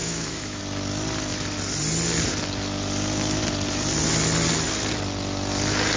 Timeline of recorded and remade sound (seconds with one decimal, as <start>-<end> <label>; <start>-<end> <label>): 0.0-0.6 remade; 0.6-6.0 recorded